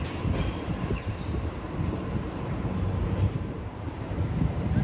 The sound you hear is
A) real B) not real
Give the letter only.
B